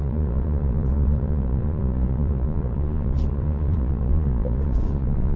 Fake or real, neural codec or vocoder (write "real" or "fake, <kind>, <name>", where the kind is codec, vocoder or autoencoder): fake, vocoder, Vocos